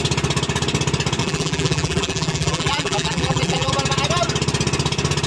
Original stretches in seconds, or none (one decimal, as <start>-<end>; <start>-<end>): 0.0-1.2; 3.7-5.3